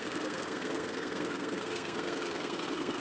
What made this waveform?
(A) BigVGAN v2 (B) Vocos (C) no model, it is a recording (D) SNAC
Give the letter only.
D